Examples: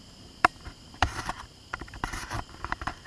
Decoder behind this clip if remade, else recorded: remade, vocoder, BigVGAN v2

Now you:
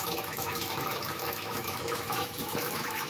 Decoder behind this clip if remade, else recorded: remade, autoencoder, DAC-VAE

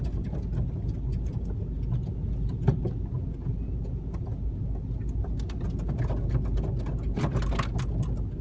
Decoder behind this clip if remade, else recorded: recorded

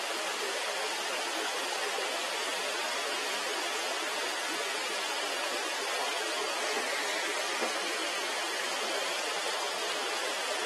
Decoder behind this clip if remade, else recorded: recorded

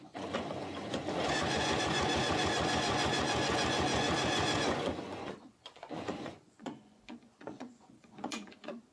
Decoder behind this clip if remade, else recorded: remade, vocoder, Vocos